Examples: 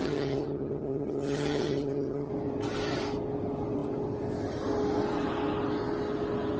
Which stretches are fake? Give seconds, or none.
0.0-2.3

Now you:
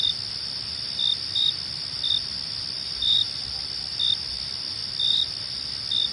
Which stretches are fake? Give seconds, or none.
none

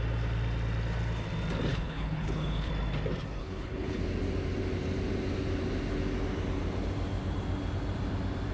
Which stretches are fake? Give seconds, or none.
1.7-2.7; 3.4-4.0

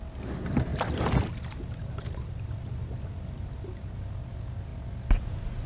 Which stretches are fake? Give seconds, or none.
0.7-3.6

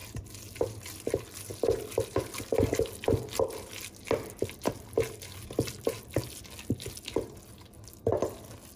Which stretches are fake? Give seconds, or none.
none

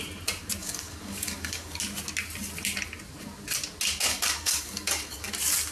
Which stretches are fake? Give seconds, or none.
0.6-1.8; 4.1-5.3